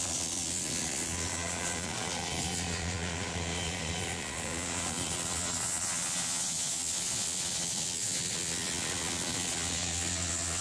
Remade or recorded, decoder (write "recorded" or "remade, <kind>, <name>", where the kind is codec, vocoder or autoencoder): remade, vocoder, Vocos